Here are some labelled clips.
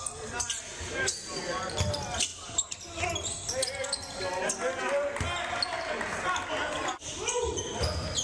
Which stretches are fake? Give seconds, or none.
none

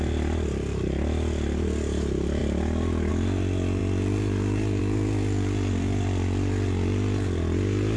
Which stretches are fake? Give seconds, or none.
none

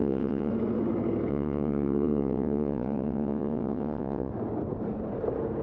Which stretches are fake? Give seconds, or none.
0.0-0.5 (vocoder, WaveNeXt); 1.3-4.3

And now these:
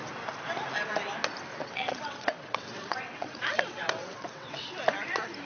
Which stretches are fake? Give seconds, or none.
1.5-4.8 (vocoder, WaveNeXt)